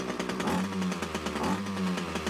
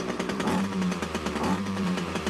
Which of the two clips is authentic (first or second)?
first